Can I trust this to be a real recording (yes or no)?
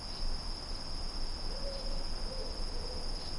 yes